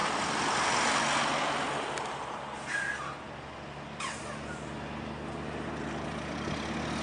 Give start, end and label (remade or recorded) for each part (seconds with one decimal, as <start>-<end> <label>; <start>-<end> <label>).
0.0-7.0 recorded